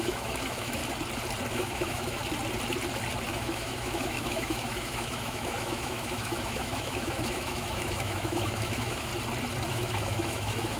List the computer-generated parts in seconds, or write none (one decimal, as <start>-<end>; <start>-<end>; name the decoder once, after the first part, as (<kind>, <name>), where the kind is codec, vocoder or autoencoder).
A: 0.0-0.8 (autoencoder, DAC-VAE); 1.5-2.2; 3.3-9.1; 9.7-10.8